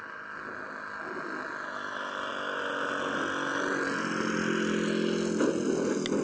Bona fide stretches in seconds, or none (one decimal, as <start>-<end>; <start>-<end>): 0.0-6.2